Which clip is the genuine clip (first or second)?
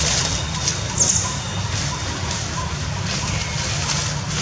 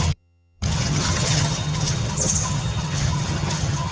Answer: first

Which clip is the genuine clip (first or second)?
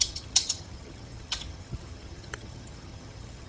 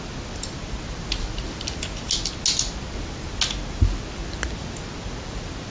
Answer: second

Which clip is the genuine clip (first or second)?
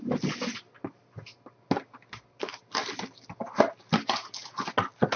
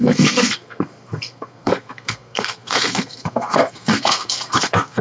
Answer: first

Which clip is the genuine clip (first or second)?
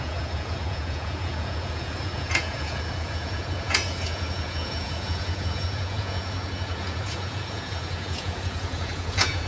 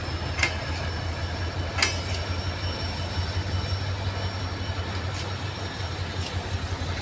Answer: second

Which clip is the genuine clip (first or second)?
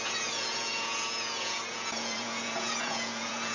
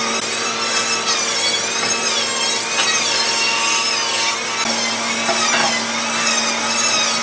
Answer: second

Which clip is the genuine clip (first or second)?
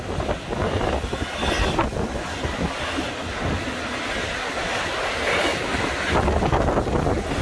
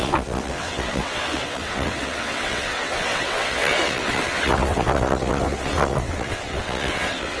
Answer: first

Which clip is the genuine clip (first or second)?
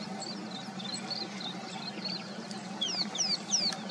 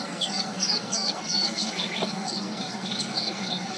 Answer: first